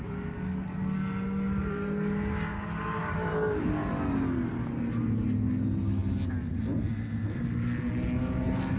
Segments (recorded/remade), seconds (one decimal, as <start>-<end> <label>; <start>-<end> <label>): 0.0-8.8 recorded